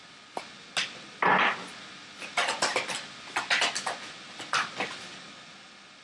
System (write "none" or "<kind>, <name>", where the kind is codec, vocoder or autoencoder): none